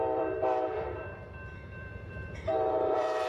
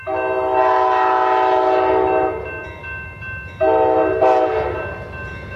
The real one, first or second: second